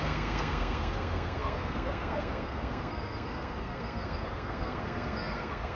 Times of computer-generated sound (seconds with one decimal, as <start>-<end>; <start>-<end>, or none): 0.0-5.7